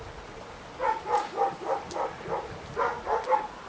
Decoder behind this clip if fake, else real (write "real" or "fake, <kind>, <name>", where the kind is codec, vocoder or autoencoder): real